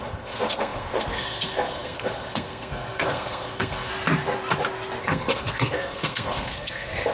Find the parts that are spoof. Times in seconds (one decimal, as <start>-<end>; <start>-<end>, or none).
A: 0.0-3.9; 5.0-7.1